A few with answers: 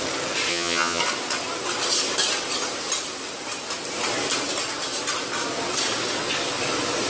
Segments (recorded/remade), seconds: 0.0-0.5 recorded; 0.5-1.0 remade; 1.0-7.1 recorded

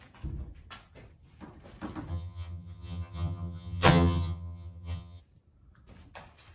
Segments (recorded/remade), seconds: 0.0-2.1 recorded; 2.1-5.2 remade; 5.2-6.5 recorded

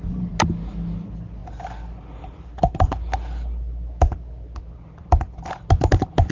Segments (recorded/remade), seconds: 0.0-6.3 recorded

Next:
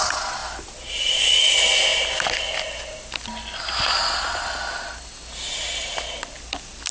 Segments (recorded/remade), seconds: 0.0-6.9 recorded

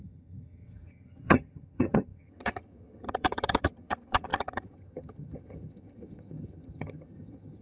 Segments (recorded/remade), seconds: 0.0-7.6 remade

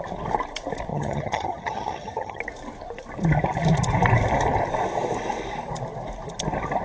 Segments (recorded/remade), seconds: 0.0-0.9 recorded; 0.9-2.4 remade; 2.4-6.8 recorded